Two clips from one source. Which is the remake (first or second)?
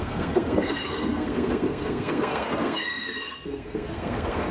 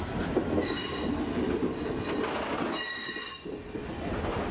first